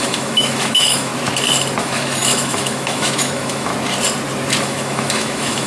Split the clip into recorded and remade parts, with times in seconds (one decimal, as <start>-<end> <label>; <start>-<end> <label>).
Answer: 0.0-1.1 remade; 1.1-1.8 recorded; 1.8-3.7 remade; 3.7-4.6 recorded; 4.6-5.7 remade